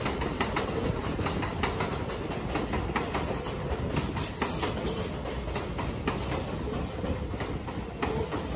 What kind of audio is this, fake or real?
real